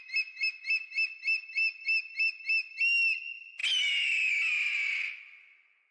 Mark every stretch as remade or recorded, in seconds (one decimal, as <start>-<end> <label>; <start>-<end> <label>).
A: 0.0-1.6 recorded; 1.6-2.3 remade; 2.3-3.6 recorded; 3.6-4.3 remade; 4.3-5.9 recorded